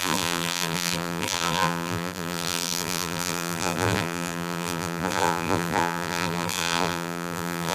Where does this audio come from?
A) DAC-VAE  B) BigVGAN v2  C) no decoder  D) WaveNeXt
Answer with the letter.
B